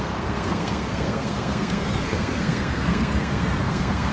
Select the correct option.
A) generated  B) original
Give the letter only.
A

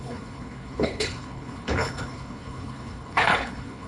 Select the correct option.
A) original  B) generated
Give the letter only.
B